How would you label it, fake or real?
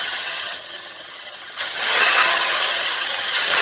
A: fake